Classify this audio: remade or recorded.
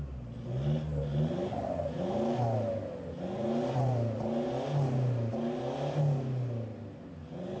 recorded